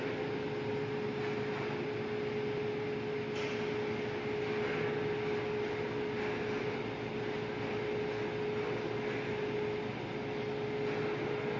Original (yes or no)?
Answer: yes